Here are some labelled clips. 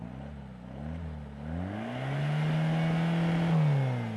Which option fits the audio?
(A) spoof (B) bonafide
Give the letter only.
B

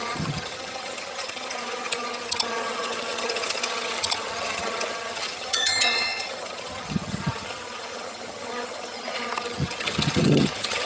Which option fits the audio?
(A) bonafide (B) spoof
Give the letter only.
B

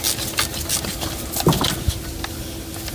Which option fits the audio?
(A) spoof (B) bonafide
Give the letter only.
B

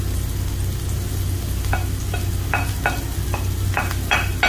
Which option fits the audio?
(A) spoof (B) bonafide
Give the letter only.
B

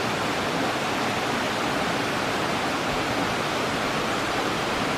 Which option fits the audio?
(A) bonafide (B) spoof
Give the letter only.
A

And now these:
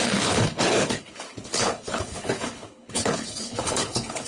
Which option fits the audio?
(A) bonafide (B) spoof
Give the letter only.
B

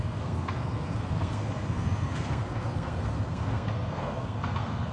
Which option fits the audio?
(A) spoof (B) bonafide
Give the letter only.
A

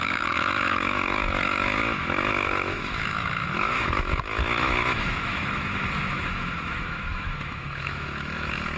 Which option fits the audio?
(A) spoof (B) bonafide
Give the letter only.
A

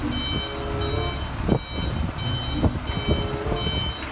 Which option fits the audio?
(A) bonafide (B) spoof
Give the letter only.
A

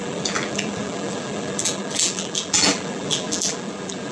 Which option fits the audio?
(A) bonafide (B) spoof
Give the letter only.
B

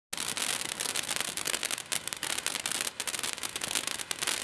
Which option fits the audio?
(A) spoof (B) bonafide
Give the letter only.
B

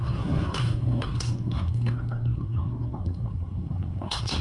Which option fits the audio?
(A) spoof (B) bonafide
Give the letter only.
A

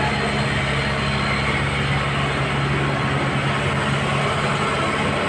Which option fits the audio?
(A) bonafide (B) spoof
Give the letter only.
A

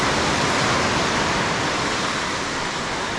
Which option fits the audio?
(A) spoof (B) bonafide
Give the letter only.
B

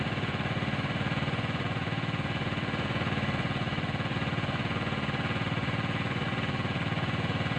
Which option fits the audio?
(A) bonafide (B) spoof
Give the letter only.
B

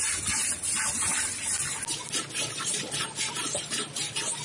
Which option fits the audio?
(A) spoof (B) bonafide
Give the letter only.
B